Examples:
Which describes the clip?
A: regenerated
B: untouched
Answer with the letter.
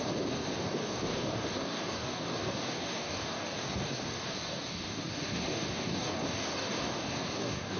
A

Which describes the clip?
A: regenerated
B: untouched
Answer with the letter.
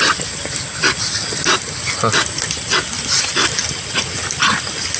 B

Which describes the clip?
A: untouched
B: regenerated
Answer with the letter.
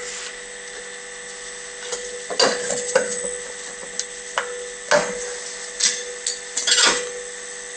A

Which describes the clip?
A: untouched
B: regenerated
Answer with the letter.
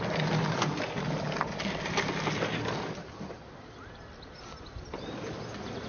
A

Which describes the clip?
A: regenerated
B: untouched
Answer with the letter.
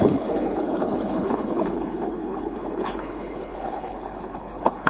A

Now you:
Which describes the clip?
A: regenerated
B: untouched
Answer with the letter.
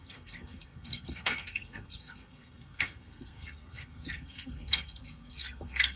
A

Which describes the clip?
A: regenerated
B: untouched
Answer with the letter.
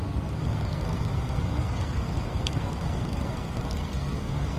A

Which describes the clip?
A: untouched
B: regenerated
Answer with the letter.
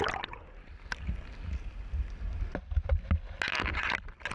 A